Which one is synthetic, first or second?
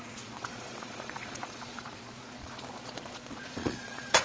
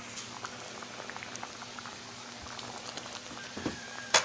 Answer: first